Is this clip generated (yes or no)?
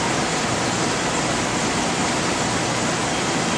no